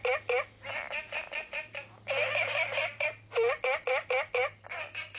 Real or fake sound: real